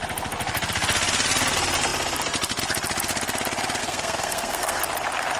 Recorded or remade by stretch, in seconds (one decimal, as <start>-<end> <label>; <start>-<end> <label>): 0.0-3.8 recorded; 3.8-4.8 remade; 4.8-5.4 recorded